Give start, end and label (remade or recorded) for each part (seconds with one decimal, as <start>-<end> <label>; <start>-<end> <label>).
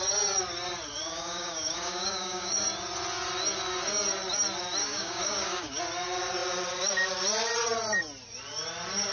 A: 0.0-1.0 recorded; 1.0-2.6 remade; 2.6-4.8 recorded; 4.8-5.8 remade; 5.8-9.1 recorded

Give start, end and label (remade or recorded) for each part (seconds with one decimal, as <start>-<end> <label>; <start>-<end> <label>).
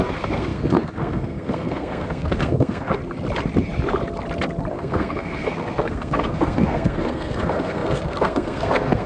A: 0.0-3.0 remade; 3.0-4.7 recorded; 4.7-9.1 remade